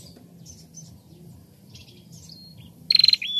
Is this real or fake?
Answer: real